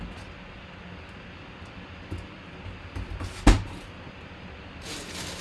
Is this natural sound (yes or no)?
yes